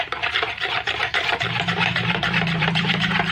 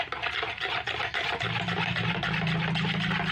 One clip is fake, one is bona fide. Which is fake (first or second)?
first